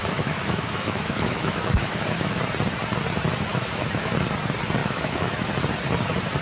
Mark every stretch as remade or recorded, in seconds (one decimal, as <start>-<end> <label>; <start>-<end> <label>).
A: 0.0-2.4 remade; 2.4-3.5 recorded; 3.5-4.1 remade; 4.1-4.8 recorded; 4.8-5.5 remade; 5.5-6.4 recorded